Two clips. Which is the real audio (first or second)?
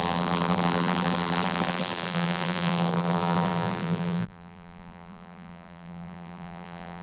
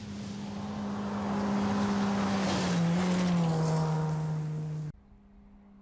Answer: second